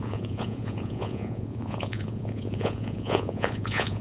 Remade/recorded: remade